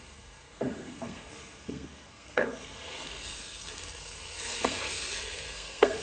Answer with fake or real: fake